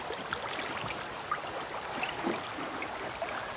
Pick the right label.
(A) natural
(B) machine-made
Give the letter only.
A